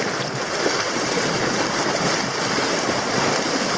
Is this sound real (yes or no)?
yes